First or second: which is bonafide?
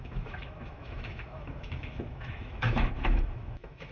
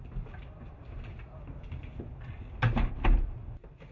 second